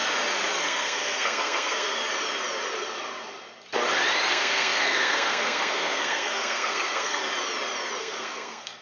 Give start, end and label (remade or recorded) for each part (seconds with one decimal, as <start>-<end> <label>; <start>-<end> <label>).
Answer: 0.0-0.6 recorded; 0.6-2.0 remade; 2.0-4.3 recorded; 4.3-7.2 remade; 7.2-8.0 recorded; 8.0-8.8 remade